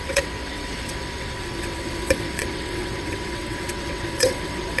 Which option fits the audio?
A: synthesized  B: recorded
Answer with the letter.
A